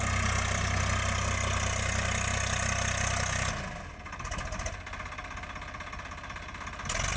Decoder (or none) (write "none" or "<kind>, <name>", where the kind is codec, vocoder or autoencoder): none